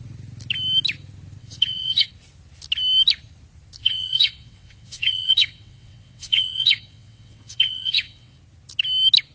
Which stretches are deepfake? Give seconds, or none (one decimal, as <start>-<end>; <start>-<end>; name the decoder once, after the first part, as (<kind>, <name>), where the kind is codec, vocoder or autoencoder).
1.4-2.1 (vocoder, WaveNeXt); 3.8-8.4